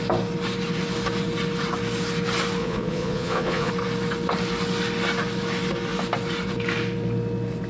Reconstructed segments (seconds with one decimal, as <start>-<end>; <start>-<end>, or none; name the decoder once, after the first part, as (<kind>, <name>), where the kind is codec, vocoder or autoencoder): 2.6-3.7 (vocoder, Vocos)